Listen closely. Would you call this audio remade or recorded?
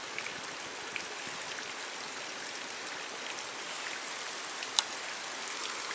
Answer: recorded